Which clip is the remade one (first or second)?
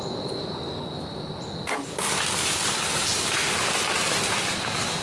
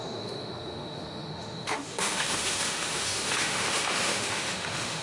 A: second